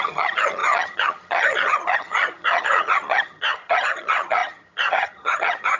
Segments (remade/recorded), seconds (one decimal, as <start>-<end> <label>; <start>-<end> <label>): 0.0-5.8 remade